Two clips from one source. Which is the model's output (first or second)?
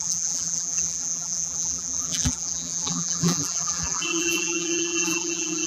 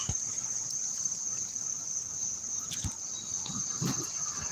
first